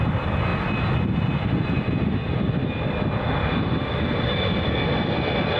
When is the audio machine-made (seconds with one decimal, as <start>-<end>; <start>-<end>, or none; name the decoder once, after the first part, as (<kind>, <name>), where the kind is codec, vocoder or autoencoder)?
none